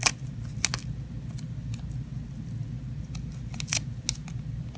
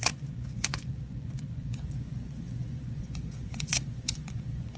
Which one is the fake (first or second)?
second